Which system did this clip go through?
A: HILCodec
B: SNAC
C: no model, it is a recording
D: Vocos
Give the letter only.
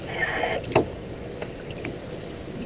C